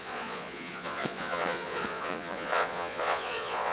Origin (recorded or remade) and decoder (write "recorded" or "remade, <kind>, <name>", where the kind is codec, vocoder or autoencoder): remade, vocoder, Vocos